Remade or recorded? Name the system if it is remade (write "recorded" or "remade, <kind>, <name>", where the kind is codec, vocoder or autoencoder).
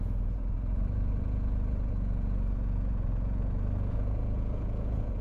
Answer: remade, vocoder, Vocos